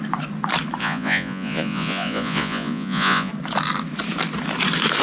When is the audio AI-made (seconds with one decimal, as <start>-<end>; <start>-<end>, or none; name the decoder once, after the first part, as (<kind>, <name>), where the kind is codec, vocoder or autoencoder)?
0.8-3.3 (vocoder, Vocos)